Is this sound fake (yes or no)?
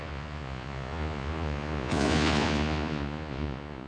yes